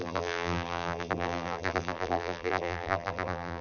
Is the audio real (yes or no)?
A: no